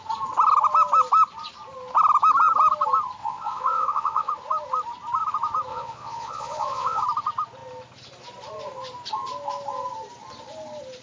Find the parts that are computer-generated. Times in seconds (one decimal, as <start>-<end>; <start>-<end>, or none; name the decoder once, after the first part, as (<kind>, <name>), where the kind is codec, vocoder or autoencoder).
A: 3.2-4.3 (vocoder, Vocos); 5.7-7.0